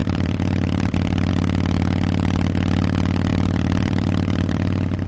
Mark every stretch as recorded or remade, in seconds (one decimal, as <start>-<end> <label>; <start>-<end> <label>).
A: 0.0-1.3 remade; 1.3-3.3 recorded; 3.3-5.1 remade